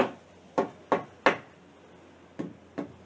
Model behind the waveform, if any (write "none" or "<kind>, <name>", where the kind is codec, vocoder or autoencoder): none